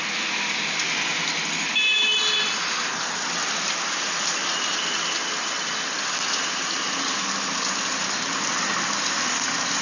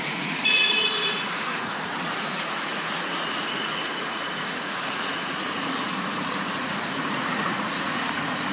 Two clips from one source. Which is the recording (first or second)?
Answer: first